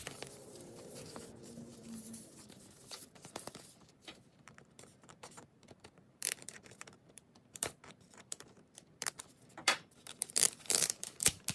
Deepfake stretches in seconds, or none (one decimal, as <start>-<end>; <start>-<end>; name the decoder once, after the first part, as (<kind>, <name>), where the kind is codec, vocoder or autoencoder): 0.0-11.5 (vocoder, BigVGAN v2)